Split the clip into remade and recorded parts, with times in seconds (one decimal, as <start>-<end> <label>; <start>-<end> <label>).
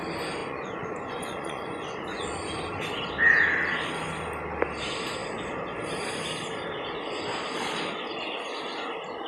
0.0-0.4 recorded; 0.4-2.2 remade; 2.2-9.3 recorded